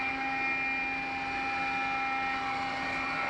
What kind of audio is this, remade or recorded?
recorded